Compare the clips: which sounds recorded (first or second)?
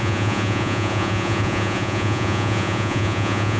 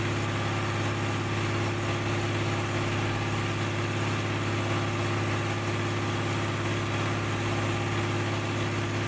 second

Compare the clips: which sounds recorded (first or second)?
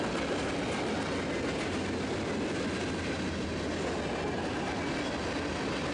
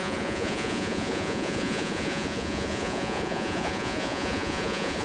first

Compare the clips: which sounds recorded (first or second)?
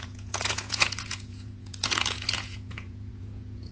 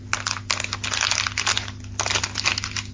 second